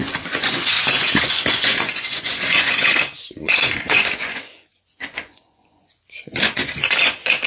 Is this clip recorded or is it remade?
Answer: remade